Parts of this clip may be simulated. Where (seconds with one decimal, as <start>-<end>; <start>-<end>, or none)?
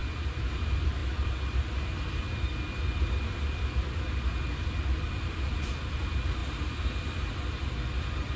0.5-6.4; 7.3-8.4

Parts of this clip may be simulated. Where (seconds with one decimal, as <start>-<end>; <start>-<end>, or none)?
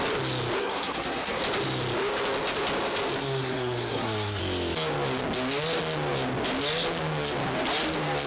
0.6-1.4; 3.2-4.4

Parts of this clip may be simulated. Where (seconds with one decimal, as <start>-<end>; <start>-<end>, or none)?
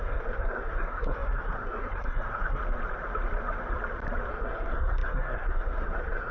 0.0-2.6; 4.3-6.3